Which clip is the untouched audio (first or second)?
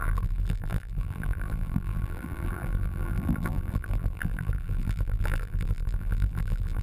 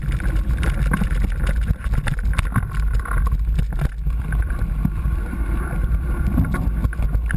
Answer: second